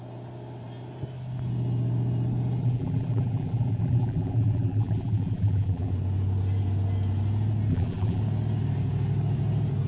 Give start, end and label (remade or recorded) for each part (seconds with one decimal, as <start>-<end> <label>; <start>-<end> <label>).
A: 0.0-2.6 recorded; 2.6-5.9 remade; 5.9-7.7 recorded; 7.7-8.2 remade; 8.2-9.9 recorded